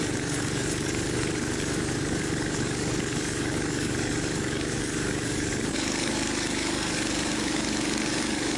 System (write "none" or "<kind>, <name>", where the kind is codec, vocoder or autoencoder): codec, DAC